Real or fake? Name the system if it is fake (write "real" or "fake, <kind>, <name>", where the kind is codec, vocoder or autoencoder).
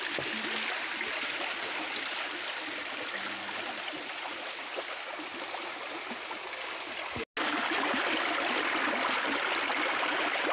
real